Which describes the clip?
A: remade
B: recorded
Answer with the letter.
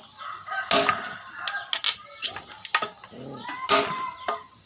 B